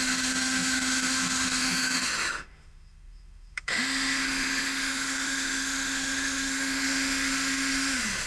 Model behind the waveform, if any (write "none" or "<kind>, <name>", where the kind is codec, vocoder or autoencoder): autoencoder, DAC-VAE